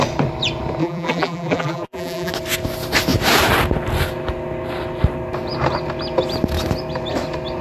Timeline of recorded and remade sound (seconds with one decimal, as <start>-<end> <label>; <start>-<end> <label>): 0.0-0.8 recorded; 0.8-2.3 remade; 2.3-7.6 recorded